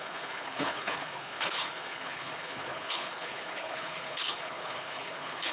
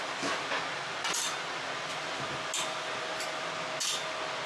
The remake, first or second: first